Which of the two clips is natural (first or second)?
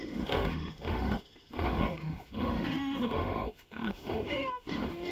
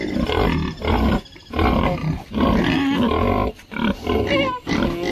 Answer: second